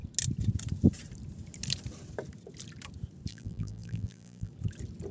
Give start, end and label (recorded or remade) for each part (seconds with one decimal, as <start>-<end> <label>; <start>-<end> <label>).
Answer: 0.0-3.3 recorded; 3.3-4.5 remade; 4.5-5.1 recorded